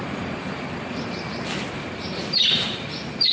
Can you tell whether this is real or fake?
fake